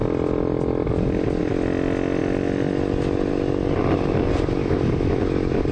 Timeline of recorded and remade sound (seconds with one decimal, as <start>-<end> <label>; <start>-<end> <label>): 0.0-4.6 recorded; 4.6-5.2 remade; 5.2-5.7 recorded

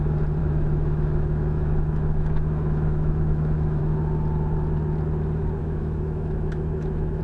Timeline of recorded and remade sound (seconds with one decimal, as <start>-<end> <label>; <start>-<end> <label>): 0.0-0.4 recorded; 0.4-3.8 remade; 3.8-5.6 recorded; 5.6-7.2 remade

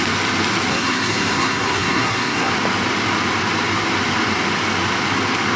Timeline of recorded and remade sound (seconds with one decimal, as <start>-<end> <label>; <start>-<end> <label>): 0.0-0.7 recorded; 0.7-2.5 remade; 2.5-5.6 recorded

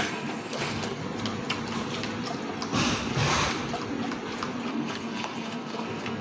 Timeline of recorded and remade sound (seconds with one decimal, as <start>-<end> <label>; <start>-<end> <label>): 0.0-1.0 remade; 1.0-4.7 recorded; 4.7-6.2 remade